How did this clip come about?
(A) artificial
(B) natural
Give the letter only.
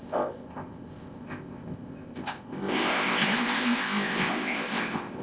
A